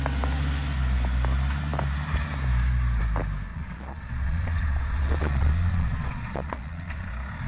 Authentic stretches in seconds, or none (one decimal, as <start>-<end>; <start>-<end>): 0.0-3.5; 7.1-7.5